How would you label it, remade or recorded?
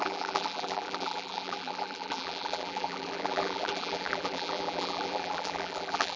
remade